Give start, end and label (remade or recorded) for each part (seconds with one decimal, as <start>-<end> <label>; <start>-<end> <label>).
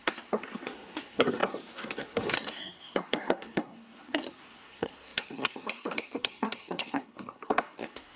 0.0-8.2 remade